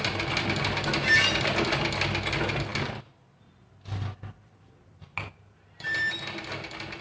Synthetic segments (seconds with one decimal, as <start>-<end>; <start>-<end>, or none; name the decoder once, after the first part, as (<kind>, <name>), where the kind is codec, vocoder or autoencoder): none